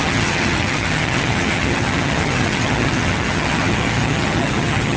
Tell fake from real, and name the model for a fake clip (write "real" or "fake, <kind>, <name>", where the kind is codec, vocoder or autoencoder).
fake, vocoder, HiFi-GAN